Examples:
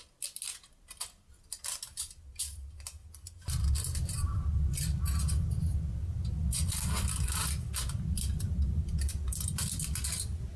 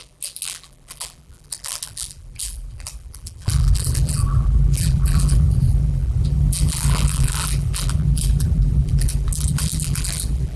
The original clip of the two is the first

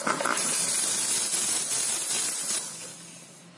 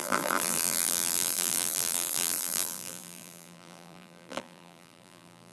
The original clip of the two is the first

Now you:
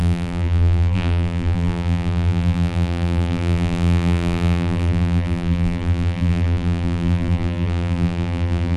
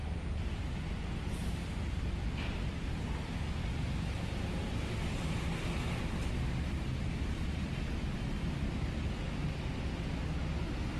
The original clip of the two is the second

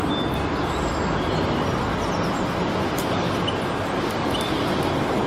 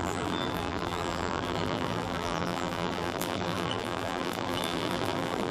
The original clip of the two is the first